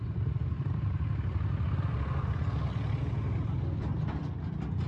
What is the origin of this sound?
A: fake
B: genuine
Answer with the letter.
B